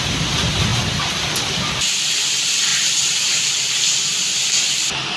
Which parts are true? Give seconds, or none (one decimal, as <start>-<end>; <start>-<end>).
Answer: 0.0-2.7; 3.5-5.2